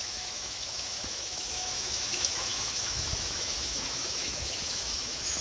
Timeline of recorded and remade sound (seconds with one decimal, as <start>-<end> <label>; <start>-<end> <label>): 0.0-5.4 remade